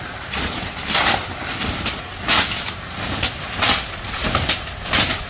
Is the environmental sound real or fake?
real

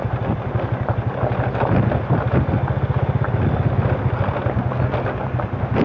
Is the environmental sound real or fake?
real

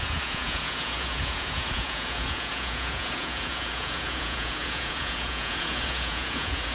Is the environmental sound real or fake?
fake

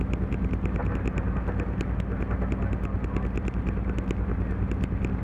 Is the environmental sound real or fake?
real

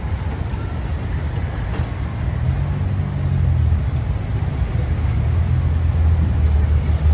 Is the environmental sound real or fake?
real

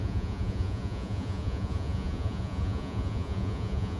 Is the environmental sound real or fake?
fake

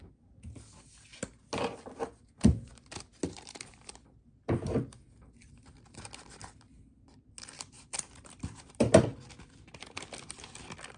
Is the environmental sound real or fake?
real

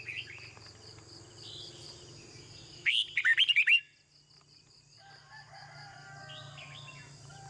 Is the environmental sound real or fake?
real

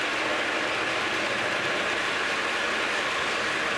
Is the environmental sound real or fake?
real